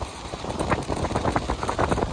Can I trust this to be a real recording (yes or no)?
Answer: no